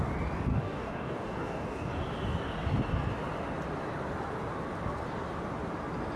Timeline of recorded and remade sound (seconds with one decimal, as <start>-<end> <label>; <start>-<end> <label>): 0.0-0.5 recorded; 0.5-1.9 remade; 1.9-6.2 recorded